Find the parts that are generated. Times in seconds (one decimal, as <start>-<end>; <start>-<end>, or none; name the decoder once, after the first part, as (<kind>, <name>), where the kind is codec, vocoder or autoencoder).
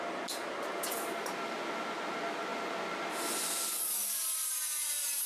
none